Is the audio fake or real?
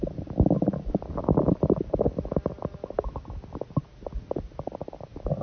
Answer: real